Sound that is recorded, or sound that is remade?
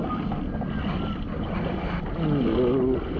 recorded